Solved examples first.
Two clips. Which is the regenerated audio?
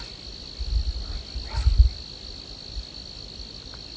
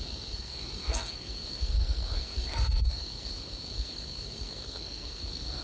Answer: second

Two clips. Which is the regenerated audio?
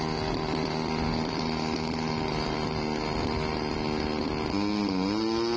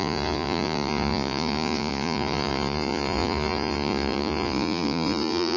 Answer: second